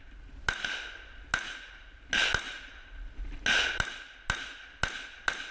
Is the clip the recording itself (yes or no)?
yes